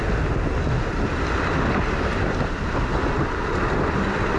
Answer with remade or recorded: remade